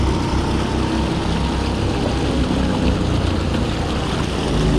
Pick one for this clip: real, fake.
real